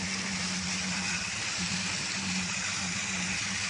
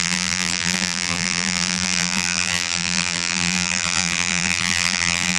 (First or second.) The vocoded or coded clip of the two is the second